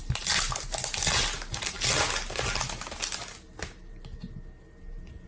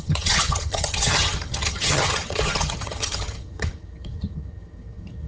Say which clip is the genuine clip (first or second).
first